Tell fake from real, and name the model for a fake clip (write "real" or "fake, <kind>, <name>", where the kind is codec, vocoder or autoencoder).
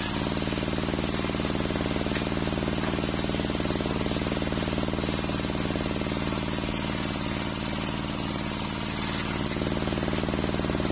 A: real